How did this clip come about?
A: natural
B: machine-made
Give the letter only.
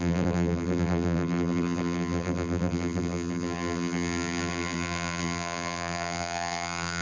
B